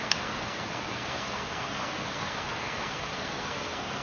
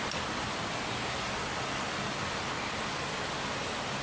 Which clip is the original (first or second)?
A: second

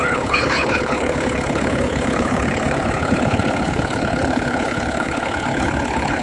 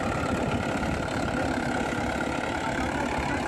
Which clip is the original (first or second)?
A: second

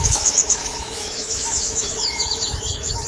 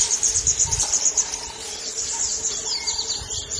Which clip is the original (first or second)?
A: second